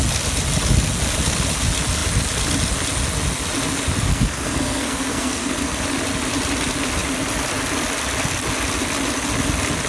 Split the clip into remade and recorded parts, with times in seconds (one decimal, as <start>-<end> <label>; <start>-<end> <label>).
0.0-4.1 recorded; 4.1-5.8 remade; 5.8-9.9 recorded